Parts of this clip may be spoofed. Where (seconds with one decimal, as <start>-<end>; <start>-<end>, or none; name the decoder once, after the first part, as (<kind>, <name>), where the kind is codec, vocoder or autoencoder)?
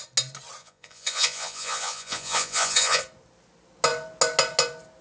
0.6-3.0 (vocoder, Vocos)